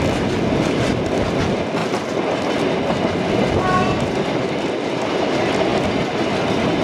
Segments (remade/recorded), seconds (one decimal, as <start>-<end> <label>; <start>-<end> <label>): 0.0-6.8 recorded